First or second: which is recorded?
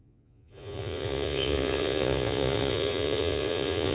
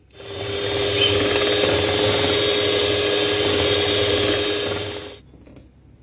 second